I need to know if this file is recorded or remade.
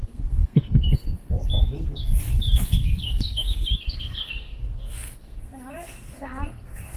remade